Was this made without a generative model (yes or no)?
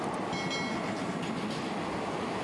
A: yes